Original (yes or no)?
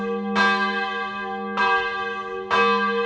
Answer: yes